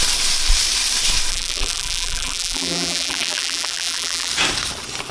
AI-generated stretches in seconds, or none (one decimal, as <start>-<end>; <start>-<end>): 1.3-4.3